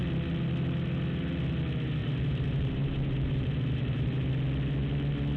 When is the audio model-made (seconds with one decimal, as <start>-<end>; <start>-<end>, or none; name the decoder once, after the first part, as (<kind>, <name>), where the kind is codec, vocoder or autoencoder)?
2.0-4.3 (vocoder, BigVGAN v2)